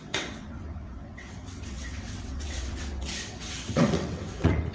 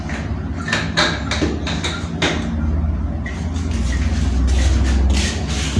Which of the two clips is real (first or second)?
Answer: second